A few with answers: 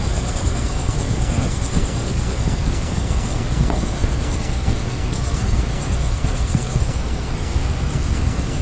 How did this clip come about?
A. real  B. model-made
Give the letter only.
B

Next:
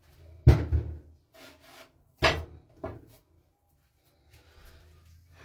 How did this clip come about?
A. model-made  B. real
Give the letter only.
B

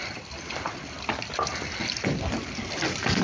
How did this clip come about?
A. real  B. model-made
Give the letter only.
A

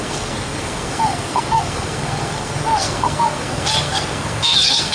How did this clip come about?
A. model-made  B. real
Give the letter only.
A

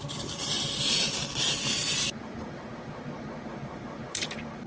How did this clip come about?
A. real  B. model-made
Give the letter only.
B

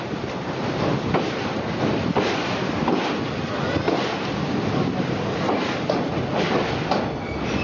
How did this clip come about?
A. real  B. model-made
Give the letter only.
A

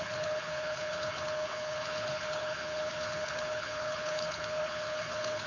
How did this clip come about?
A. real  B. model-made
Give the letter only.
B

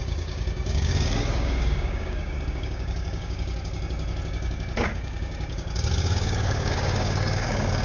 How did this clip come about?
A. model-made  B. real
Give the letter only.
A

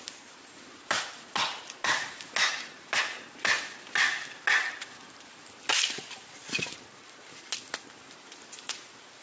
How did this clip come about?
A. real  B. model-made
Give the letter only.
A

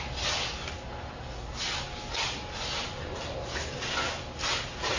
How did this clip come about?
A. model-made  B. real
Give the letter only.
B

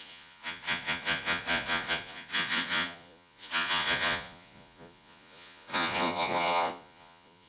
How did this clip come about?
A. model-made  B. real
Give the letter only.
A